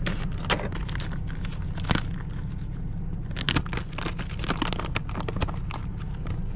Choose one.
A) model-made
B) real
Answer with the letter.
B